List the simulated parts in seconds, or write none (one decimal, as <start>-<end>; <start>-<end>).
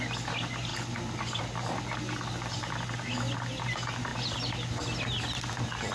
none